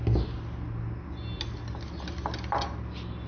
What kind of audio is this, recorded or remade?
recorded